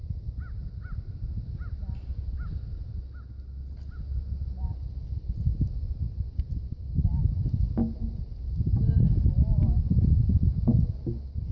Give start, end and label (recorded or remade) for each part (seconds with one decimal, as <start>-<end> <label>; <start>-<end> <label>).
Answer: 0.0-11.5 recorded